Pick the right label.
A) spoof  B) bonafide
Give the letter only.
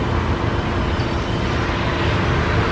B